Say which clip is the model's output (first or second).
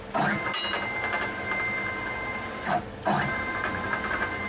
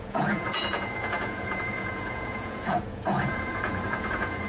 second